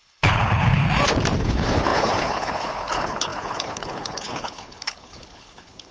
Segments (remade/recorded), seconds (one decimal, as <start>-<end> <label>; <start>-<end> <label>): 0.0-0.8 remade; 0.8-1.4 recorded; 1.4-5.9 remade